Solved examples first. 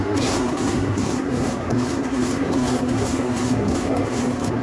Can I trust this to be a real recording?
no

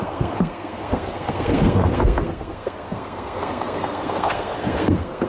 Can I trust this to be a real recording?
no